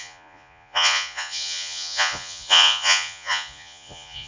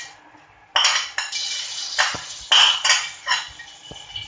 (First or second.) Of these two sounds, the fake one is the first